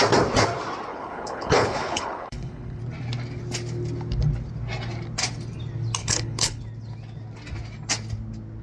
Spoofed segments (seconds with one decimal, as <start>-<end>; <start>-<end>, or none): 0.9-2.8; 6.0-6.6